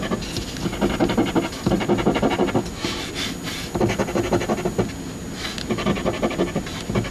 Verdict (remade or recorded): recorded